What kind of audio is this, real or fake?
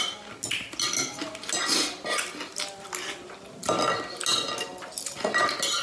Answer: real